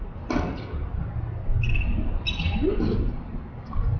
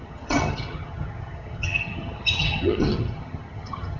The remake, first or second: second